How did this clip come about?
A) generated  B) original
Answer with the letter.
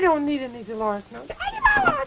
B